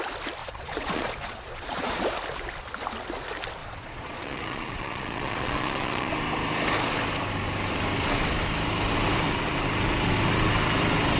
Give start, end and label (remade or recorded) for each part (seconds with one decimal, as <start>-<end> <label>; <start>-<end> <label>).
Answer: 0.0-0.4 recorded; 0.4-2.0 remade; 2.0-3.6 recorded; 3.6-6.1 remade; 6.1-11.2 recorded